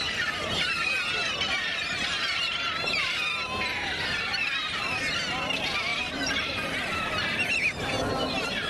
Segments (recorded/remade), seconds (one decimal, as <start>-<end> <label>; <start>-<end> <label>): 0.0-1.7 recorded; 1.7-3.1 remade; 3.1-4.3 recorded; 4.3-5.0 remade; 5.0-5.9 recorded; 5.9-8.7 remade